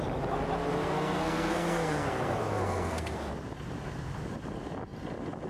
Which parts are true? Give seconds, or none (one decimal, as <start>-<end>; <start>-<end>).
0.0-0.8; 3.3-5.5